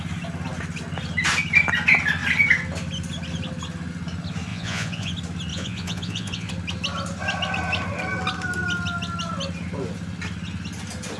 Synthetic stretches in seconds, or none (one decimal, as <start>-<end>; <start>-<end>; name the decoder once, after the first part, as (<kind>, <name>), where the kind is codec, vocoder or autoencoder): 4.5-5.1 (vocoder, Vocos); 5.5-6.5